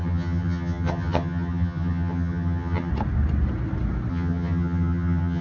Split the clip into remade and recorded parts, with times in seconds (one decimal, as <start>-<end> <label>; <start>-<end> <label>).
0.0-2.9 remade; 2.9-4.1 recorded; 4.1-5.4 remade